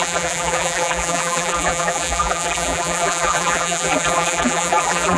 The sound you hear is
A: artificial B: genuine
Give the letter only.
A